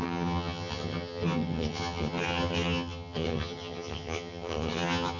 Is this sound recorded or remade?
remade